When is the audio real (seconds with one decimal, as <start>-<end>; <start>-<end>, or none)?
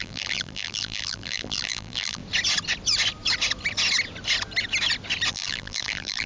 2.2-5.3